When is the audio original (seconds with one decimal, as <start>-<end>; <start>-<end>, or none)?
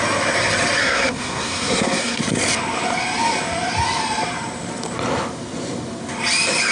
0.0-0.8; 2.2-6.7